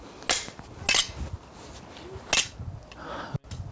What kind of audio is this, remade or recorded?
recorded